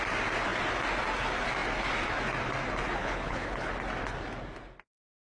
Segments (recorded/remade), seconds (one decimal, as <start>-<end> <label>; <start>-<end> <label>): 0.0-3.0 recorded; 3.0-3.7 remade; 3.7-5.3 recorded